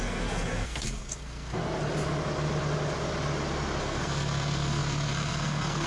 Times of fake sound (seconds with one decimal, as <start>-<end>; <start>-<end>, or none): 0.0-1.6; 3.8-5.9